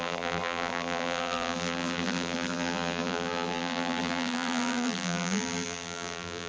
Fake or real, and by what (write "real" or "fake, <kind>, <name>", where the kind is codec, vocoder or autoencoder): fake, vocoder, BigVGAN v2